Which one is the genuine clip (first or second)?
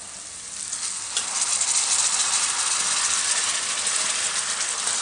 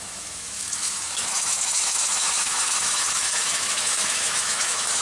first